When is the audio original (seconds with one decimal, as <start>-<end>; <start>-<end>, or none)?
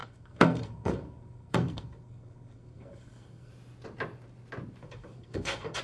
3.5-4.8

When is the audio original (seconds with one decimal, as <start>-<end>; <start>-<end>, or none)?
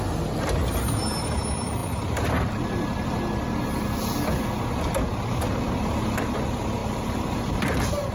0.0-8.1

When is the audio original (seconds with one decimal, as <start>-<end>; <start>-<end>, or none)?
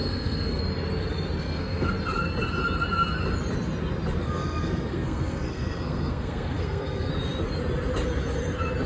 0.6-1.4; 1.9-4.2; 7.1-8.9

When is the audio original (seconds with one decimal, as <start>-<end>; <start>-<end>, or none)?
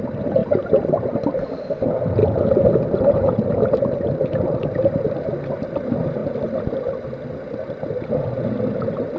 0.0-9.2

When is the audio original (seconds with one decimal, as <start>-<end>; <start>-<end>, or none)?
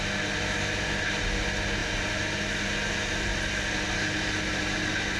0.0-5.2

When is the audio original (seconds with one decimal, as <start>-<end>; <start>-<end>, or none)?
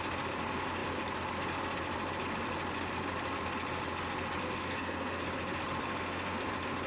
0.0-4.4; 5.2-5.8; 6.5-6.9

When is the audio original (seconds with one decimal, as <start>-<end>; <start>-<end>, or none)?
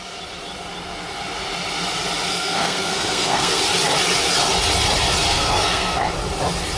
0.0-2.3; 3.6-5.3; 6.1-6.8